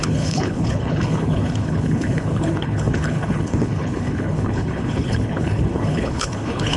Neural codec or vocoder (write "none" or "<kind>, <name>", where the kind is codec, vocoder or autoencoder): codec, HILCodec